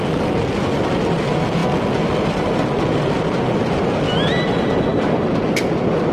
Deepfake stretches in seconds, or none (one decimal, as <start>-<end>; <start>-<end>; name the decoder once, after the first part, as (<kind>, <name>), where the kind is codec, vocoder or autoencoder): none